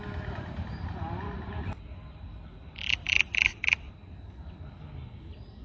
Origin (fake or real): real